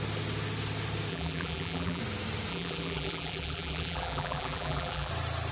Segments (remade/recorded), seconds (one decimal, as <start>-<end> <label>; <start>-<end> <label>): 0.0-1.1 recorded; 1.1-2.0 remade; 2.0-2.5 recorded; 2.5-5.1 remade; 5.1-5.5 recorded